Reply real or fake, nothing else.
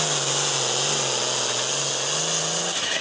real